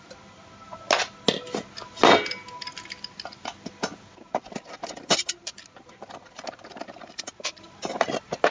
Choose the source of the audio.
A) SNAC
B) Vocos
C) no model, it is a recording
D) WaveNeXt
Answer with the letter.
C